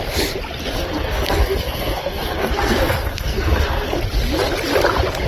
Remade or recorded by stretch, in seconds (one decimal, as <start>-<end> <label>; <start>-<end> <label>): 0.0-0.8 recorded; 0.8-4.0 remade; 4.0-5.3 recorded